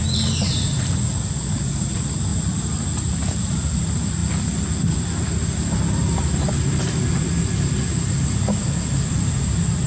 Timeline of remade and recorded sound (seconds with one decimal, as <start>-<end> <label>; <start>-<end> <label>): 0.0-9.9 recorded